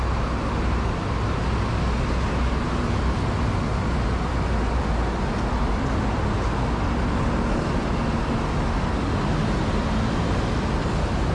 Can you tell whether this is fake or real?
real